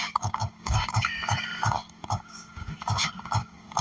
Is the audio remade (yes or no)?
yes